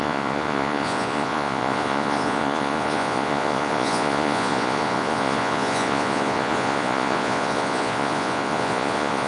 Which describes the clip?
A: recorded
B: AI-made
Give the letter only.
B